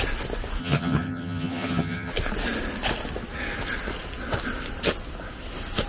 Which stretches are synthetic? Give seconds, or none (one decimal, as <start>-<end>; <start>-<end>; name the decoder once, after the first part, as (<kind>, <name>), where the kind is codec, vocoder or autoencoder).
0.6-2.1 (vocoder, HiFi-GAN)